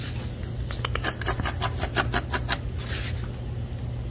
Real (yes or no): yes